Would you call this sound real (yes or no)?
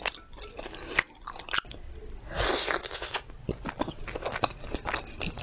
yes